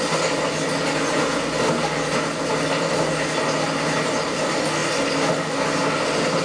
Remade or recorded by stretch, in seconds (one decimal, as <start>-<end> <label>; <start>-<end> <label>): 0.0-6.4 recorded